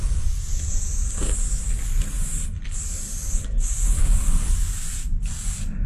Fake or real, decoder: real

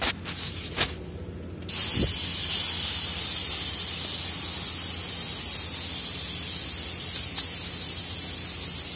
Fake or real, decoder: real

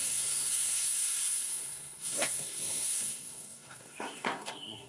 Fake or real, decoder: fake, codec, SNAC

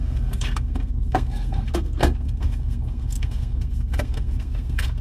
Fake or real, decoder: fake, codec, SNAC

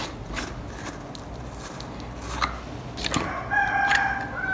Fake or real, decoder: real